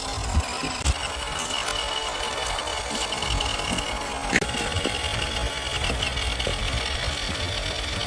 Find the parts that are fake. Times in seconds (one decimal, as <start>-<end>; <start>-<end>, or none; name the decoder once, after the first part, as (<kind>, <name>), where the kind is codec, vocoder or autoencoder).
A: none